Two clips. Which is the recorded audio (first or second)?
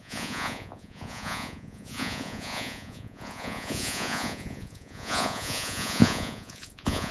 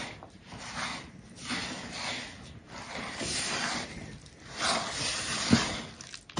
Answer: second